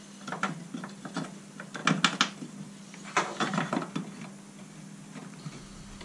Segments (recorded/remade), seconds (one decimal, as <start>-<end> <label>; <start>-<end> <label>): 0.0-6.0 recorded